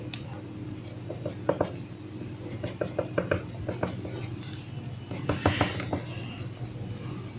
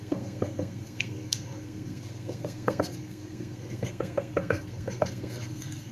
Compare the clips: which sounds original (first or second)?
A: first